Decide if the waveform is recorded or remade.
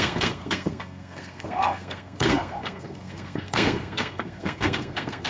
remade